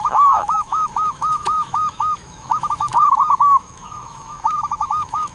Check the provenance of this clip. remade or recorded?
remade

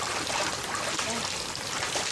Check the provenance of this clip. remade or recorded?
recorded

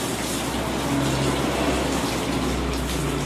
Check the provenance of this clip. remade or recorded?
recorded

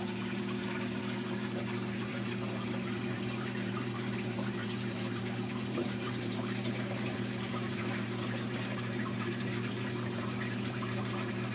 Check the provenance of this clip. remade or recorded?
remade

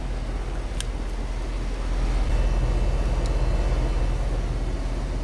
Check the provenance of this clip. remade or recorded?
recorded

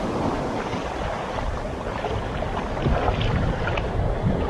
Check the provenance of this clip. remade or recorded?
recorded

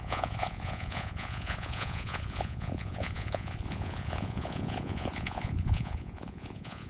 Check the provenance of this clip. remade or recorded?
remade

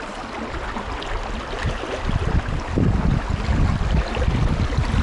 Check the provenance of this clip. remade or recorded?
recorded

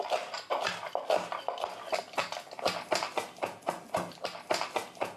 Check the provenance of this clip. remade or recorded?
recorded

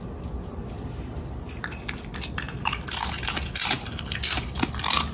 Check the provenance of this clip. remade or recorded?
recorded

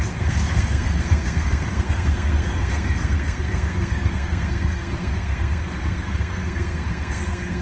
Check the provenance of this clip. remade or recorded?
remade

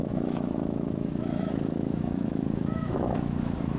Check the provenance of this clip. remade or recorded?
remade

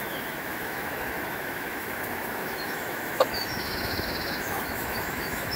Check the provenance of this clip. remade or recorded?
remade